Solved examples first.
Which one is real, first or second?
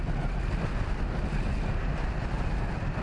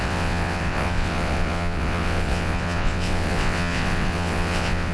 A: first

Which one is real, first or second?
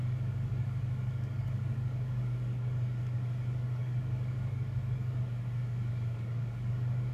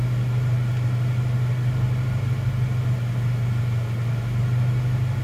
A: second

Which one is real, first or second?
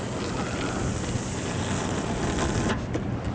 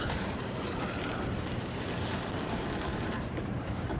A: first